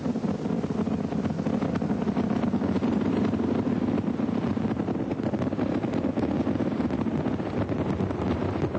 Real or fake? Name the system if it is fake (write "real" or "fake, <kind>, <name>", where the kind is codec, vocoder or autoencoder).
real